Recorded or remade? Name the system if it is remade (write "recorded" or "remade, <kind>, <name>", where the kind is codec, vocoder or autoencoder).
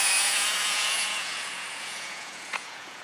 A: remade, vocoder, Vocos